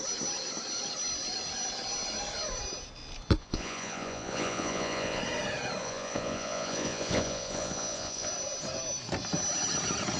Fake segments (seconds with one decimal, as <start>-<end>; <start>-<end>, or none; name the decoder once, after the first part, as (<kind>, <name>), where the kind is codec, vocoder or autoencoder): 3.4-5.2 (vocoder, Vocos); 5.8-8.3